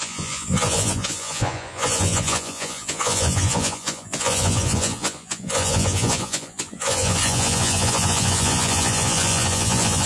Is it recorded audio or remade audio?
remade